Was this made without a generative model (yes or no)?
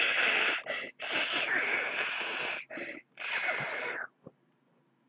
yes